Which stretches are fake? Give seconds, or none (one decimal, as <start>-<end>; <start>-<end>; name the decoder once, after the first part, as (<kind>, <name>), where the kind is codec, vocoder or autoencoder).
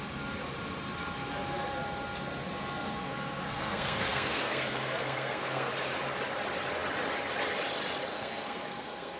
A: 3.0-5.7 (codec, SNAC); 8.1-9.2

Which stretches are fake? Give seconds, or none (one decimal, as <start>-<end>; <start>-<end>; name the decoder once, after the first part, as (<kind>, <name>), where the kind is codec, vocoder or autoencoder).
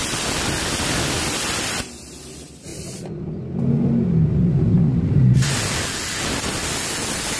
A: none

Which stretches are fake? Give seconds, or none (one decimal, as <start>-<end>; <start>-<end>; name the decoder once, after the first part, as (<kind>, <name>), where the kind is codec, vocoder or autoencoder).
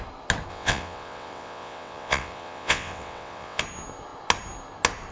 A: 0.5-3.6 (vocoder, WaveNeXt)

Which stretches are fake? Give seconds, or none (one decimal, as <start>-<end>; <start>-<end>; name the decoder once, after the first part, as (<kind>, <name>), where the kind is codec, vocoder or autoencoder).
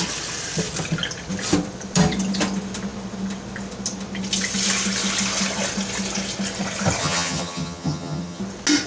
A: 7.0-8.4 (vocoder, HiFi-GAN)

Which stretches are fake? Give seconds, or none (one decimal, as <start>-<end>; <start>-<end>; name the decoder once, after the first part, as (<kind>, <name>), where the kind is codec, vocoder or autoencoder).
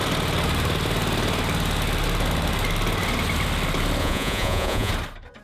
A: 4.0-4.9 (vocoder, Vocos)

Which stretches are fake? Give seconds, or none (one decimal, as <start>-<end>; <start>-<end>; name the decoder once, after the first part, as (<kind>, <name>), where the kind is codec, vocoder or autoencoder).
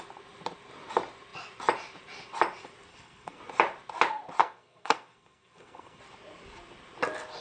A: 2.9-3.4 (codec, SNAC); 4.4-6.0